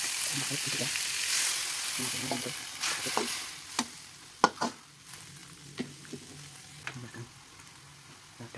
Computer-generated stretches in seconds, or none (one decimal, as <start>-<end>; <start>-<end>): none